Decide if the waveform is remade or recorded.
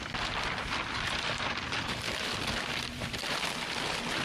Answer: remade